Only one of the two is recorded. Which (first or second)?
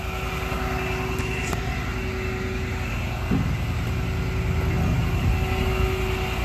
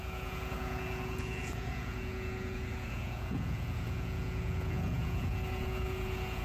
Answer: first